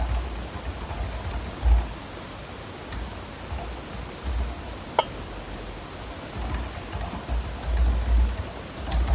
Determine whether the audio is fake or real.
real